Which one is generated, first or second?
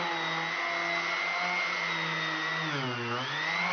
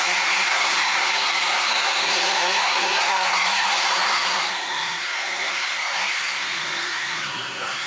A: second